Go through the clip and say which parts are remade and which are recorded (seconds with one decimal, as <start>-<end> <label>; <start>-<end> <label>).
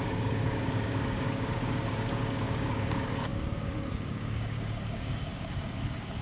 0.0-6.2 remade